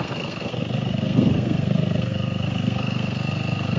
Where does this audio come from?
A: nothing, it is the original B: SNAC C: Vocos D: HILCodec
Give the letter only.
B